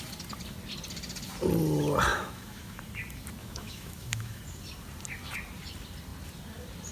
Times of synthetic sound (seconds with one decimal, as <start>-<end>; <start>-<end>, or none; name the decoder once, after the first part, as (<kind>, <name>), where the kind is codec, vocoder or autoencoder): 2.1-2.8 (autoencoder, DAC-VAE); 3.4-4.4

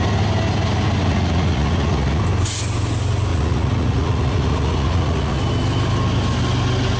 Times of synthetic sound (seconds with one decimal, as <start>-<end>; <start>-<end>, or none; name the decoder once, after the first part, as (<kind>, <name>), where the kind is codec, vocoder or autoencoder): 1.0-2.2 (vocoder, Vocos); 3.3-5.4